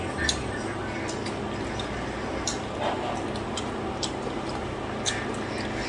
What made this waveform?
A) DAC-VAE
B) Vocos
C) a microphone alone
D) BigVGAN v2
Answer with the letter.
C